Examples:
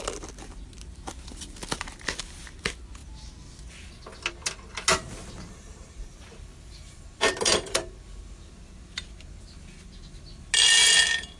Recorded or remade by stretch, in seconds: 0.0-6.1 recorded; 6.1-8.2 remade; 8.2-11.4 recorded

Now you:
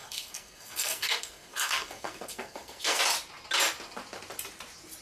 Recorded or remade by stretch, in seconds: 0.0-3.0 remade; 3.0-5.0 recorded

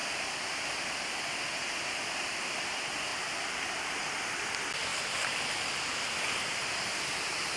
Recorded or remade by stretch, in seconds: 0.0-1.2 remade; 1.2-3.1 recorded; 3.1-4.1 remade; 4.1-4.9 recorded; 4.9-5.5 remade; 5.5-7.6 recorded

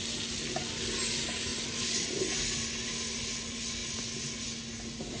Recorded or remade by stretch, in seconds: 0.0-5.2 recorded

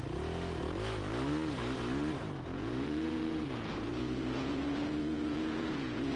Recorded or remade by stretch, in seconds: 0.0-2.5 recorded; 2.5-6.2 remade

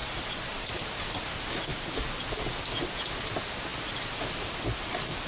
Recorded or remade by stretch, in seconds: 0.0-0.7 remade; 0.7-5.3 recorded